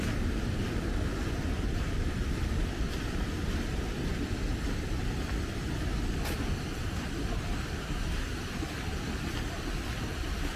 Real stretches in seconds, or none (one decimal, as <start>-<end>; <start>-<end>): 0.0-1.1; 3.8-10.6